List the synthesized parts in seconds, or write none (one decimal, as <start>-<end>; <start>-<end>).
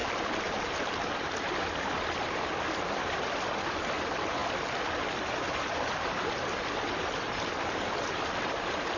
none